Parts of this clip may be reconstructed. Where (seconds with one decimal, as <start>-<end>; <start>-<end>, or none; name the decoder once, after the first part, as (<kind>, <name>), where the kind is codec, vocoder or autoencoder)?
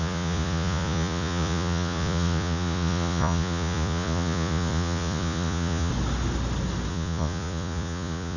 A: 0.0-5.9 (vocoder, Vocos); 6.9-8.4